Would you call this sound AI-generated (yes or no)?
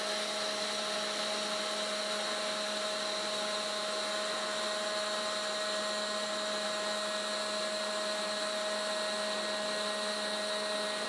no